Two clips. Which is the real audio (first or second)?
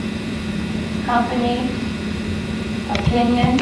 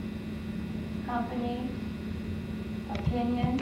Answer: second